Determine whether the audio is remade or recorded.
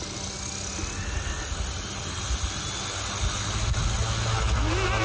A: recorded